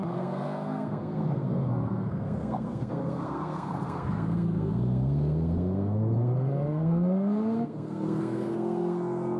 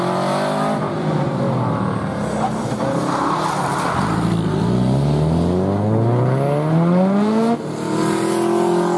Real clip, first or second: second